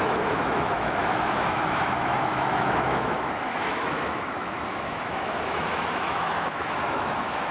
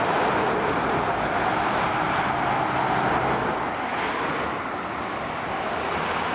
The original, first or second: second